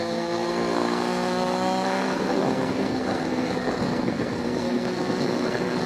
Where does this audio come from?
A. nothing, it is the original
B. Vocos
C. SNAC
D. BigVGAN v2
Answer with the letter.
C